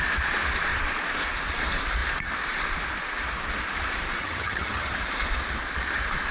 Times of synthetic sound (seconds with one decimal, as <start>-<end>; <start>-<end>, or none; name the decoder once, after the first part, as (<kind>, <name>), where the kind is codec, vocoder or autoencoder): 4.2-4.9 (vocoder, HiFi-GAN)